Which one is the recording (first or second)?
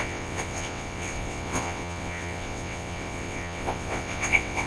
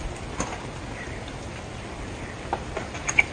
second